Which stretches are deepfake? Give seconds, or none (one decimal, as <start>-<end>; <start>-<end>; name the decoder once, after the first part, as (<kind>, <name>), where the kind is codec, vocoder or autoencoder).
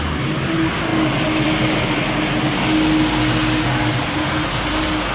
none